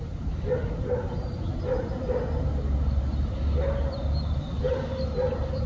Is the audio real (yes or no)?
yes